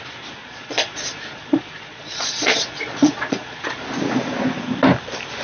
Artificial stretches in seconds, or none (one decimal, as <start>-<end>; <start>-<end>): 0.4-3.6